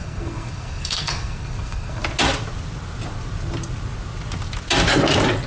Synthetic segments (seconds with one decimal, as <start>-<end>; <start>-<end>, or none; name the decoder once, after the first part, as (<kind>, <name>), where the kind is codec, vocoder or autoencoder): 0.0-2.0 (codec, SNAC)